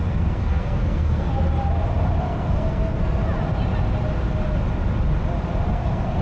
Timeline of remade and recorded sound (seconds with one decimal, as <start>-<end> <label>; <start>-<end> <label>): 0.0-1.3 remade; 1.3-2.2 recorded; 2.2-3.2 remade; 3.2-5.7 recorded; 5.7-6.2 remade